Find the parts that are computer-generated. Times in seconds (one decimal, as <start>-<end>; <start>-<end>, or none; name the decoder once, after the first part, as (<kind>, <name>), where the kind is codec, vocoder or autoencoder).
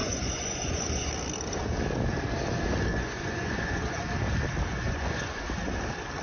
0.0-1.1 (vocoder, Vocos); 2.9-4.0; 4.7-5.4